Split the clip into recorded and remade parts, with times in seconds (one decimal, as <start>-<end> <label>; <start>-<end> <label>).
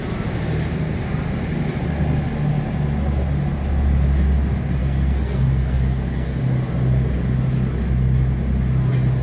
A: 0.0-4.8 recorded; 4.8-6.4 remade; 6.4-9.2 recorded